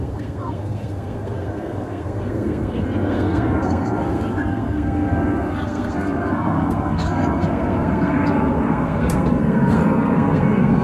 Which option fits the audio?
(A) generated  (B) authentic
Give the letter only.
A